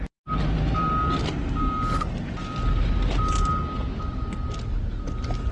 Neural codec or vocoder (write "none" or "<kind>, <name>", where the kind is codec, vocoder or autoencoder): none